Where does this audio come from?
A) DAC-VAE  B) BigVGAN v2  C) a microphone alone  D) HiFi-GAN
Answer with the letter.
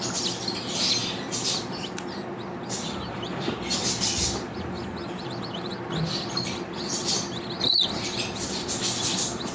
B